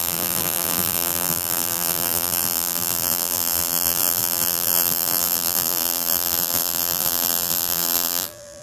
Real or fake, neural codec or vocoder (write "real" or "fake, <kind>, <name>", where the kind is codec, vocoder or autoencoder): fake, vocoder, BigVGAN v2